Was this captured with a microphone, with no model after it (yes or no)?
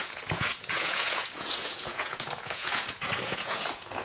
no